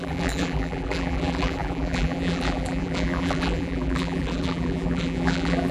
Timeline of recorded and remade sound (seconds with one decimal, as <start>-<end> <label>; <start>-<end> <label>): 0.0-5.7 remade